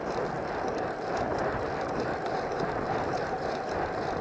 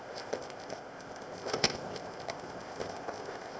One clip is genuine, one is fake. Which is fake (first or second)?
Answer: second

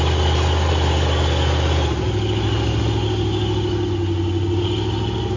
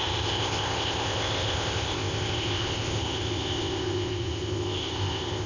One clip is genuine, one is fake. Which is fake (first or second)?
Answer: second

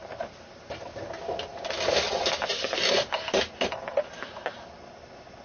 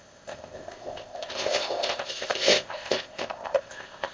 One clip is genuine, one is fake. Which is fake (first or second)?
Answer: second